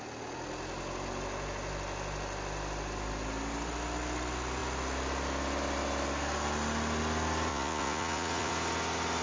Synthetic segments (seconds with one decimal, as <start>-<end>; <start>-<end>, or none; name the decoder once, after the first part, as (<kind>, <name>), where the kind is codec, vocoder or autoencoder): 7.5-8.5 (vocoder, Vocos)

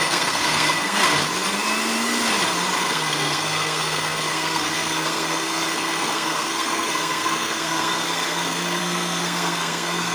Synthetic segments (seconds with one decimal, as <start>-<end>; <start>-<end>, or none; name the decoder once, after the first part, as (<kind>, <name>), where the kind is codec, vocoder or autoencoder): 0.0-1.1 (codec, SNAC); 2.8-10.1

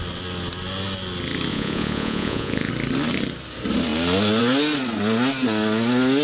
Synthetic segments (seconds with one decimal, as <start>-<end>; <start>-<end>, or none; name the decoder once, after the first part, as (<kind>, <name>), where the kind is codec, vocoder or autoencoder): 1.5-2.7 (vocoder, Vocos)